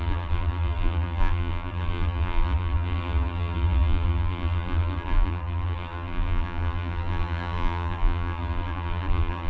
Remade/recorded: remade